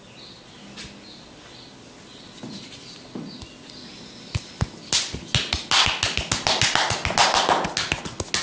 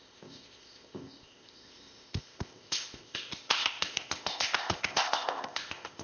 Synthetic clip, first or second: second